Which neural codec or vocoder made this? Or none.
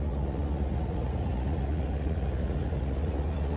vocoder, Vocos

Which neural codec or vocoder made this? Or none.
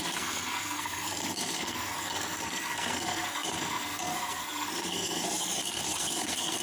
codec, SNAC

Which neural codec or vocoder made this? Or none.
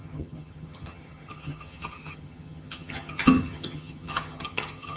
vocoder, HiFi-GAN